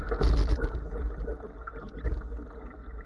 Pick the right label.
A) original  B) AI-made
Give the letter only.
A